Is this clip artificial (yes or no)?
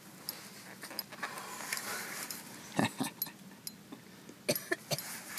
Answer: no